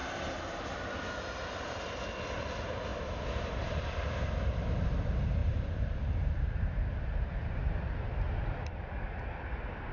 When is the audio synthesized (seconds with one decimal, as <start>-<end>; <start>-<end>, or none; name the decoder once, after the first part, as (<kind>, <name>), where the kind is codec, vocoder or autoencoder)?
0.0-0.9 (vocoder, BigVGAN v2); 2.9-4.4; 5.4-9.0